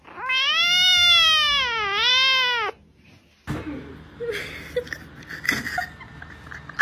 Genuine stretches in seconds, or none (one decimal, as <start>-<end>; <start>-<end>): 0.0-6.8